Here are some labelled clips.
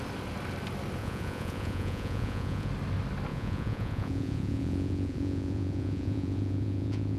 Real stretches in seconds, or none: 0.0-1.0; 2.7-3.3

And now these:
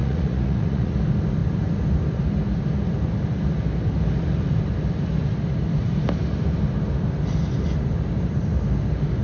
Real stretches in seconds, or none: 0.9-9.2

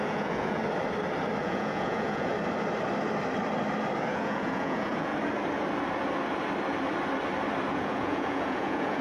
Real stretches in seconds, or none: 0.6-1.4; 2.3-4.1; 5.1-7.7

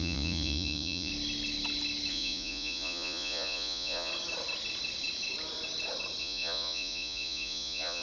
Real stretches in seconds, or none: 1.1-2.1; 4.1-6.2